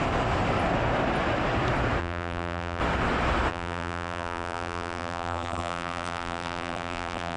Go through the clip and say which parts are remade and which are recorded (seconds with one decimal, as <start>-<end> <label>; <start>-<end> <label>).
0.0-2.0 recorded; 2.0-2.8 remade; 2.8-3.5 recorded; 3.5-7.4 remade